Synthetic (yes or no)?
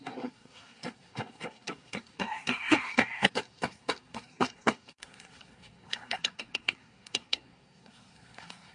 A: yes